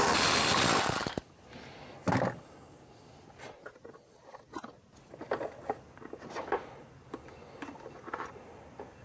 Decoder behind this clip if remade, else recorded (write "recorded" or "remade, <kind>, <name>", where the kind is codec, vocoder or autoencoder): recorded